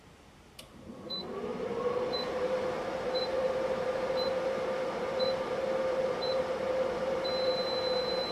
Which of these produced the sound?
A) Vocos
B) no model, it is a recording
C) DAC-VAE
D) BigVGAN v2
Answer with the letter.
D